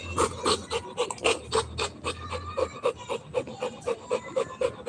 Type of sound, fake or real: real